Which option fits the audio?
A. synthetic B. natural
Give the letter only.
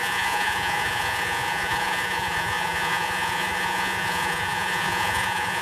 A